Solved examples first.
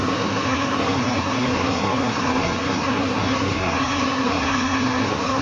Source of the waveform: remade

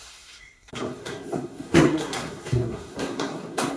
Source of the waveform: remade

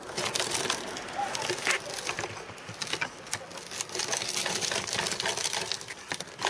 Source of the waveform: recorded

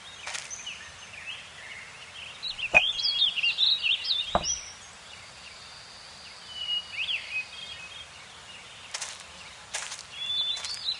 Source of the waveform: recorded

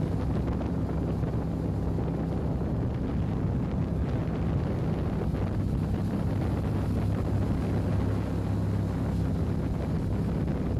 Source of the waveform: recorded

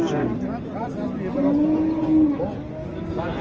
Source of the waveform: recorded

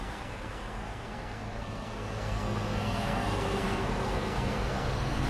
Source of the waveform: remade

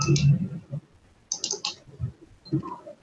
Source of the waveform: recorded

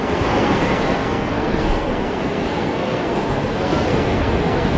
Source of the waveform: remade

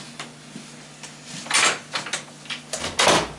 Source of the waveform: recorded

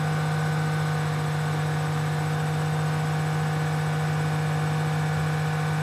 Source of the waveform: recorded